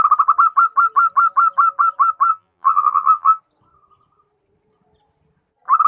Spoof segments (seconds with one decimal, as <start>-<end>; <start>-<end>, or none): 2.3-3.4